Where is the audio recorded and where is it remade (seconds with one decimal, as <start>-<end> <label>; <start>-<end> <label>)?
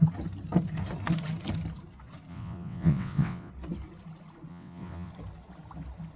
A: 0.0-2.3 recorded; 2.3-3.5 remade; 3.5-4.5 recorded; 4.5-5.1 remade; 5.1-6.2 recorded